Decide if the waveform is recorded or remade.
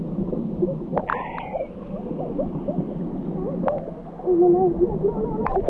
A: recorded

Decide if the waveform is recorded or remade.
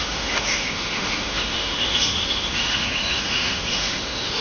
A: remade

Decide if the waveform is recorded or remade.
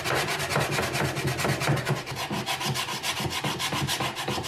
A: recorded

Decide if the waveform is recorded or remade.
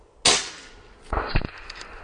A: recorded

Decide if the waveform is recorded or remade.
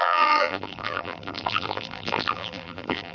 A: remade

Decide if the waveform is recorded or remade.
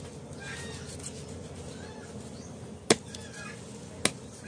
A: recorded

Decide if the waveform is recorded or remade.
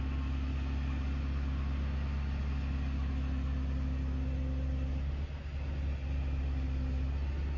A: recorded